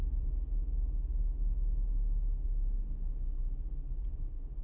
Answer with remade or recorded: recorded